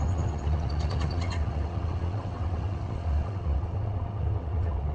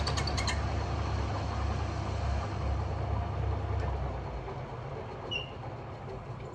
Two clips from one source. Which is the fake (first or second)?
first